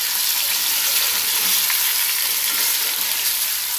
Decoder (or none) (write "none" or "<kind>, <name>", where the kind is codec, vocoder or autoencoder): none